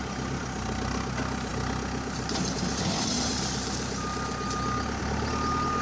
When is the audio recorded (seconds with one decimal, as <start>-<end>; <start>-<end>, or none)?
0.0-5.8